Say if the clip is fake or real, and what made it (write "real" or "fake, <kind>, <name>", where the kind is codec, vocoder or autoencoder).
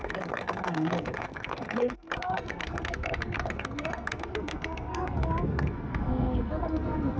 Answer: fake, codec, SNAC